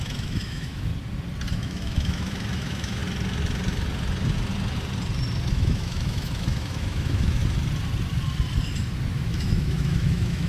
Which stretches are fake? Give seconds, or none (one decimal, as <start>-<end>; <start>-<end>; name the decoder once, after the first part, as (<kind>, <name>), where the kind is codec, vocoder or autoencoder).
0.0-0.9 (autoencoder, DAC-VAE); 1.5-3.0; 5.5-7.4; 9.1-10.5